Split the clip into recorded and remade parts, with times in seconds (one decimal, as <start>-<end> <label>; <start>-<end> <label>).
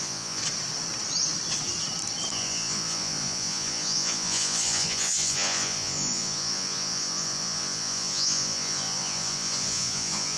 0.0-0.4 remade; 0.4-2.3 recorded; 2.3-10.4 remade